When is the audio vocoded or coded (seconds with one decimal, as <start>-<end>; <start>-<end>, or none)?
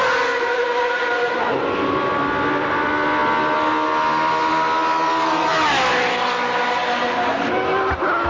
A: none